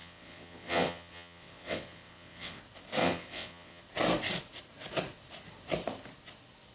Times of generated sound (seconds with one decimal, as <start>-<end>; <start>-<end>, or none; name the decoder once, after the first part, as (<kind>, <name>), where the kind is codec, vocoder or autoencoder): 0.0-2.6 (vocoder, WaveNeXt); 3.0-3.8